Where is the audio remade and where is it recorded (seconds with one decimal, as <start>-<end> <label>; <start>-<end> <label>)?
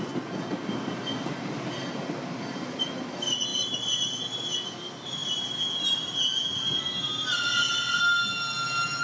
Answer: 0.0-7.3 recorded; 7.3-8.0 remade; 8.0-9.0 recorded